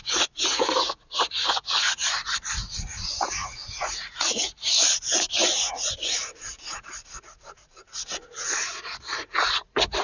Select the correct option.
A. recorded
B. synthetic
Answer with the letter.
B